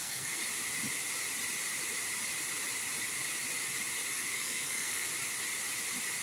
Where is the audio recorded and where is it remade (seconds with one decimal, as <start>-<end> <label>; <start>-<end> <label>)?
0.0-0.4 remade; 0.4-4.1 recorded; 4.1-5.1 remade; 5.1-6.2 recorded

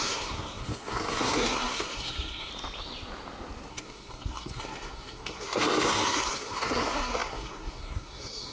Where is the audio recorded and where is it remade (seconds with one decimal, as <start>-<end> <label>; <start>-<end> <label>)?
0.0-2.5 remade; 2.5-3.7 recorded; 3.7-8.5 remade